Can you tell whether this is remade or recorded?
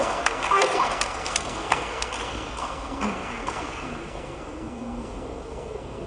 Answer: remade